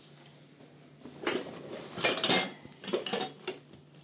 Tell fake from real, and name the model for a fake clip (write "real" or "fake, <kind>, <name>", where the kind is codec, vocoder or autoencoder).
real